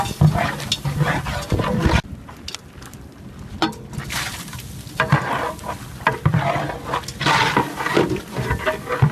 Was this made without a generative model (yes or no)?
yes